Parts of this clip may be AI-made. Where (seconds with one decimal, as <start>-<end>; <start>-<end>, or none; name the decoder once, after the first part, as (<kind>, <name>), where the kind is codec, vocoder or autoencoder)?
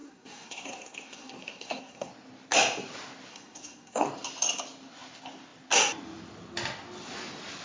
0.0-2.1 (codec, SNAC); 3.3-4.1